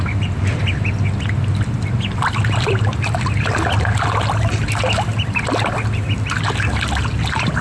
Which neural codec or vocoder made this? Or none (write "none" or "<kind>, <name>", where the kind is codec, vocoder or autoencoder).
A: none